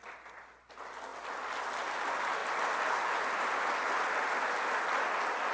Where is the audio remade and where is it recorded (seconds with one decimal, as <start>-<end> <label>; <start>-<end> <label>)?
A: 0.0-5.5 recorded